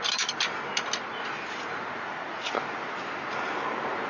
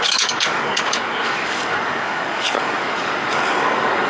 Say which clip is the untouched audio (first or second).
first